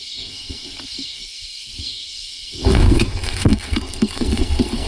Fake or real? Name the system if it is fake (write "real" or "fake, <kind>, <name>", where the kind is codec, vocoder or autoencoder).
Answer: fake, codec, SNAC